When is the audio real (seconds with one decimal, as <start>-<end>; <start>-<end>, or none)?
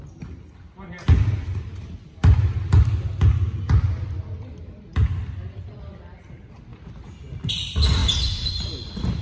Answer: 0.0-9.2